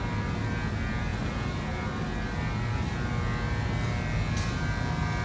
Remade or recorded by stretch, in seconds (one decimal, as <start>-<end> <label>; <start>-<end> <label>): 0.0-5.2 recorded